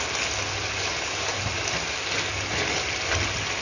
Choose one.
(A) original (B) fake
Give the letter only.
A